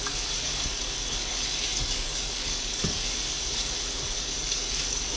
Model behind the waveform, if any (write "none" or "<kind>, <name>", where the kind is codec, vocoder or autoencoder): codec, DAC